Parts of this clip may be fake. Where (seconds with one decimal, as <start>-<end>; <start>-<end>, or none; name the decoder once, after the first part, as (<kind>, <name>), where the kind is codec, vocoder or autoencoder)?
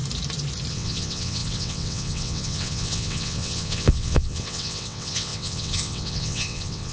0.7-6.9 (vocoder, WaveNeXt)